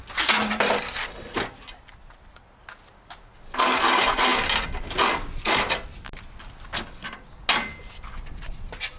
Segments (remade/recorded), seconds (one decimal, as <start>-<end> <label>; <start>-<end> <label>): 0.0-9.0 recorded